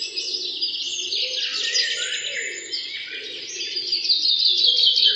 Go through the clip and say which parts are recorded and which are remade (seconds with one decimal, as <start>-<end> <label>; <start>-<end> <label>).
0.0-5.2 recorded